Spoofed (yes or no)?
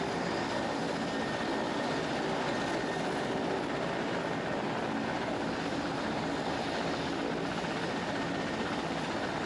no